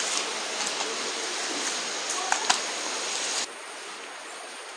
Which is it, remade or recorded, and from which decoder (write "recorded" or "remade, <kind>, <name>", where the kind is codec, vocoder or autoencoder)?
recorded